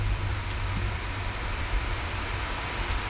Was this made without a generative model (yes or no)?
no